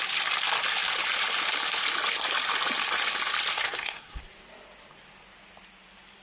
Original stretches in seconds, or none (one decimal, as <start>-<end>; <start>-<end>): 0.0-3.5; 4.2-6.2